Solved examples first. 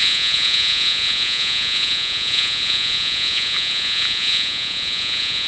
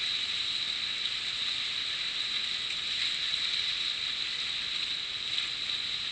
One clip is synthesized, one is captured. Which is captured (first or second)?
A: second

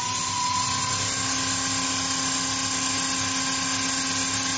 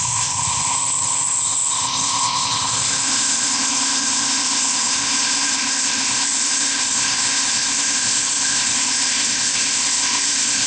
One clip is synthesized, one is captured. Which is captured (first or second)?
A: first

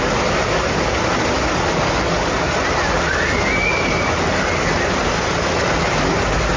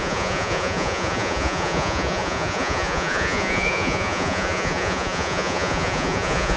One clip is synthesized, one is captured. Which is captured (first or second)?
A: first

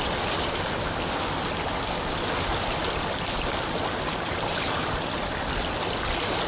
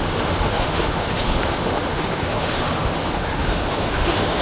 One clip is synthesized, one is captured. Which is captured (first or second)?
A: first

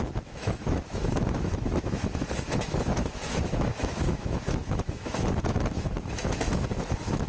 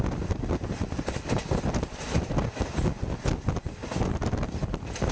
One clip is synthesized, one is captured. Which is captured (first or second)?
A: second